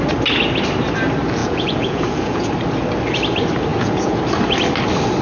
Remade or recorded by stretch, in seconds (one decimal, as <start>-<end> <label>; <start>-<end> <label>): 0.0-1.4 recorded; 1.4-2.5 remade; 2.5-3.7 recorded; 3.7-4.2 remade; 4.2-5.2 recorded